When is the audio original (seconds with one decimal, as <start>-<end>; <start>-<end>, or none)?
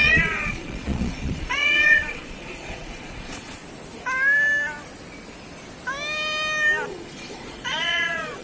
3.6-6.9